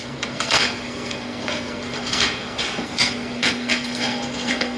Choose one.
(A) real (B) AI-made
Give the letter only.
B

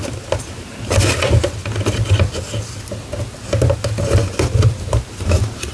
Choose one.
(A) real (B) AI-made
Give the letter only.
A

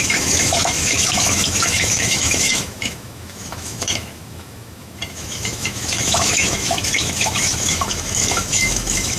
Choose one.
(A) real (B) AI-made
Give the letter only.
B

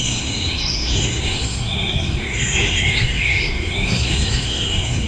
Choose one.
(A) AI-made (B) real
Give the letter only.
A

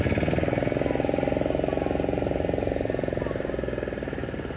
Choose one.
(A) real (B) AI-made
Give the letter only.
A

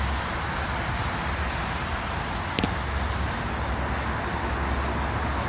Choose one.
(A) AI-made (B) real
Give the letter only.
B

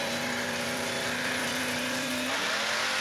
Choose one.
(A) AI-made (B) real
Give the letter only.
A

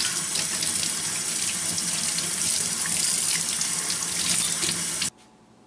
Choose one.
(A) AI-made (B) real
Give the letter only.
B